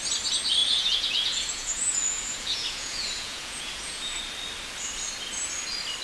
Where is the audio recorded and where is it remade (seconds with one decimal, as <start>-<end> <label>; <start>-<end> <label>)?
0.0-0.6 recorded; 0.6-4.2 remade; 4.2-6.0 recorded